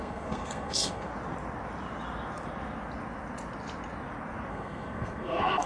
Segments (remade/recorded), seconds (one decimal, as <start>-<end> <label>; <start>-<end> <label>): 0.0-1.1 remade; 1.1-4.5 recorded; 4.5-5.7 remade